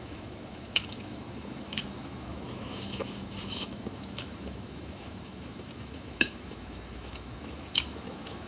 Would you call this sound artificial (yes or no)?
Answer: yes